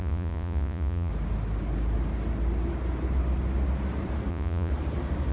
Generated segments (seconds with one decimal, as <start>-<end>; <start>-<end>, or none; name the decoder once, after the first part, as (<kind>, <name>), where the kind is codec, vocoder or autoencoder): 0.0-1.1 (vocoder, Vocos); 4.3-4.7